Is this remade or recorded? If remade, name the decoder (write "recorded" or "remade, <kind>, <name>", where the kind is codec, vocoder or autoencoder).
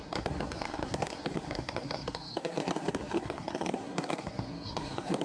remade, codec, SNAC